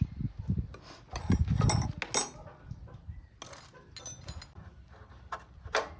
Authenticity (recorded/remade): recorded